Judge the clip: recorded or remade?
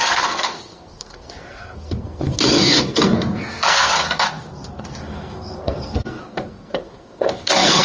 remade